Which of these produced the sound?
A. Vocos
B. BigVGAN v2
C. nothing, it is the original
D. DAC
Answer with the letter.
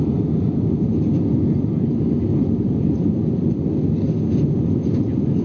C